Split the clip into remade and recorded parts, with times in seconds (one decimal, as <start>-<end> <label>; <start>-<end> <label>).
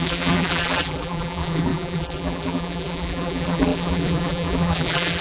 0.0-5.2 remade